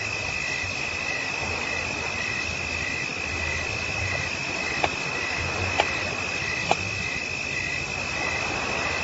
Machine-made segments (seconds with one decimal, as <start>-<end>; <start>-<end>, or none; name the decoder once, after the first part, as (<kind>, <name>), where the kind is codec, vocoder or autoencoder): none